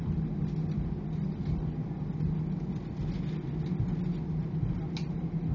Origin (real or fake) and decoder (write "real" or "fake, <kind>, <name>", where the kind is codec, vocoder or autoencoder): real